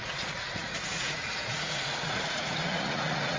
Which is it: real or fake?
fake